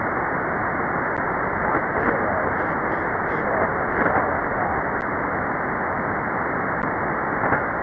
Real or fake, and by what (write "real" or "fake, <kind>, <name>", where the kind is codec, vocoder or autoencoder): real